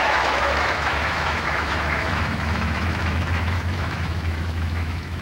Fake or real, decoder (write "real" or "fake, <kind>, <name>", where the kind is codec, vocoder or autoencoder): fake, autoencoder, DAC-VAE